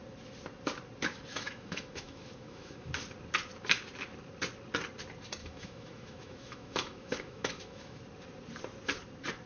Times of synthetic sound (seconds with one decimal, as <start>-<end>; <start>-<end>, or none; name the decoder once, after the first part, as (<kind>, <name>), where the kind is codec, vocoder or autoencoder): 1.3-2.9 (autoencoder, DAC-VAE); 5.4-8.0